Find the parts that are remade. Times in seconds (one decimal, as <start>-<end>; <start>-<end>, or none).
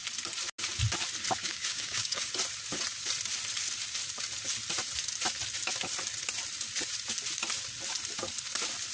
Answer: 1.4-2.3